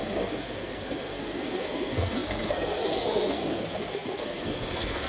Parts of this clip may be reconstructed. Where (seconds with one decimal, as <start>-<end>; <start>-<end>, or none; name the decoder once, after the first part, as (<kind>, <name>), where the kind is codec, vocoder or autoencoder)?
0.0-5.1 (codec, SNAC)